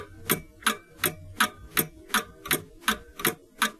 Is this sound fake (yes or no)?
no